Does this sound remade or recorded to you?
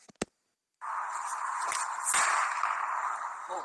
recorded